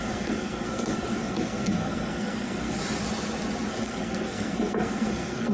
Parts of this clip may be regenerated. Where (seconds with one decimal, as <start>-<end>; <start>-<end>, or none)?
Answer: 0.0-2.8; 3.7-5.5